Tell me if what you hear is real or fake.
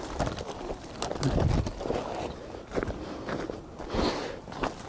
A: real